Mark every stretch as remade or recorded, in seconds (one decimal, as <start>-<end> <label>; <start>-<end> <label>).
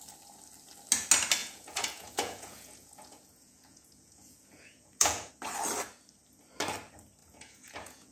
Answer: 0.0-1.4 recorded; 1.4-5.3 remade; 5.3-7.2 recorded; 7.2-8.1 remade